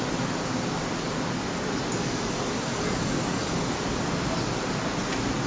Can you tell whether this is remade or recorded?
recorded